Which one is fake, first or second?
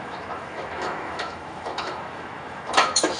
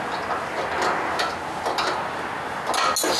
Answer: first